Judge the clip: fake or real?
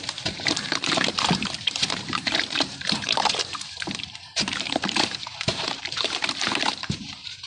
fake